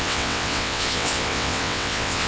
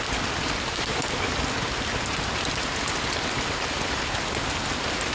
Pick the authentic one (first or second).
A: second